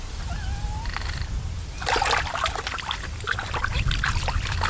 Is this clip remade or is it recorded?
recorded